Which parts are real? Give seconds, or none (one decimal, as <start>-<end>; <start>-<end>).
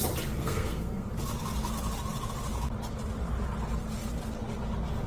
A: 0.0-0.4; 1.1-5.1